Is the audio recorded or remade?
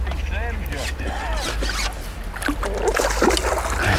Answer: recorded